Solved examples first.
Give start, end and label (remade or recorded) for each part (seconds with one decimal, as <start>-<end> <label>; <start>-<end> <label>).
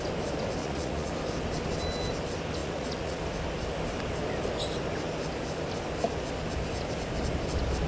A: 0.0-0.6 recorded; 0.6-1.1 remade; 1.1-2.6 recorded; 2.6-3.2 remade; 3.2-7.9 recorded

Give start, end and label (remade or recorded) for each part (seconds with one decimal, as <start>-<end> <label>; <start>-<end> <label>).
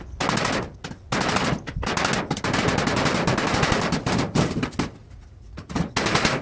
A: 0.0-5.0 recorded; 5.0-5.9 remade; 5.9-6.4 recorded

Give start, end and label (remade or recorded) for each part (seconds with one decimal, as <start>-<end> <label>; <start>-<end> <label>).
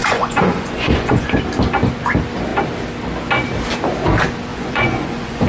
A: 0.0-1.4 remade; 1.4-4.5 recorded; 4.5-5.5 remade